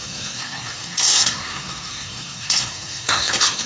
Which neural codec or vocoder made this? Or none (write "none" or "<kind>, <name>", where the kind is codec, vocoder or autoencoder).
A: codec, SNAC